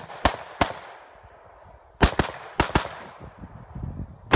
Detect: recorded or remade recorded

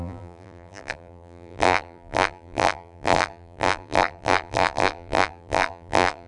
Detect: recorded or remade remade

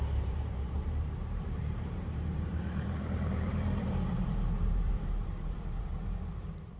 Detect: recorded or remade remade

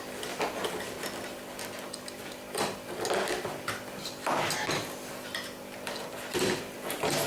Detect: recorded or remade recorded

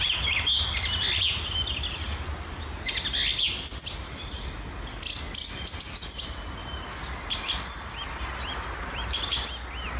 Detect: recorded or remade recorded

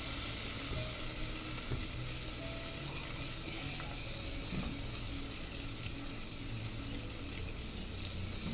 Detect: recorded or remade recorded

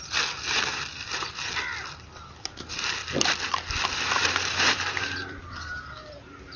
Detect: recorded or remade recorded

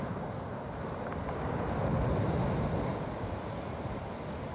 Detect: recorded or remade recorded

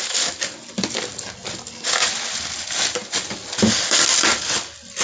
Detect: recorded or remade recorded